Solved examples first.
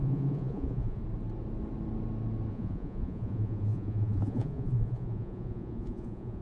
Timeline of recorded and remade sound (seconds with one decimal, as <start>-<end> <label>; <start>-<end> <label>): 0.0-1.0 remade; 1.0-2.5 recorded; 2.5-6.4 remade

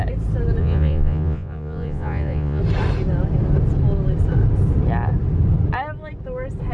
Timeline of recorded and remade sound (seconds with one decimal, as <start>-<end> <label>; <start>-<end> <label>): 0.0-0.6 recorded; 0.6-2.6 remade; 2.6-6.7 recorded

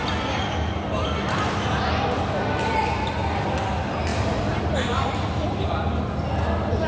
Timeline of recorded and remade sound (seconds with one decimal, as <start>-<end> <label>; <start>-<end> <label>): 0.0-6.9 recorded